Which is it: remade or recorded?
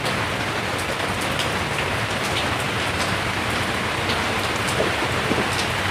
recorded